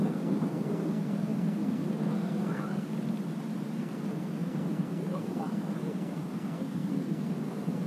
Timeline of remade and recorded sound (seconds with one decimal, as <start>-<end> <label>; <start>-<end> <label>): 0.0-2.9 remade; 2.9-3.8 recorded; 3.8-7.9 remade